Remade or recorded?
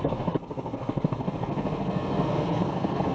remade